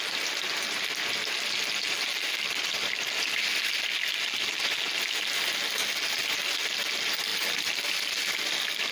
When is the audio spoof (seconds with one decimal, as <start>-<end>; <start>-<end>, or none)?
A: none